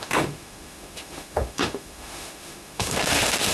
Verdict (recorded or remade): remade